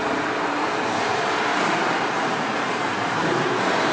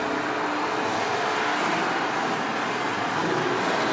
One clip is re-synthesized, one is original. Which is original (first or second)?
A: second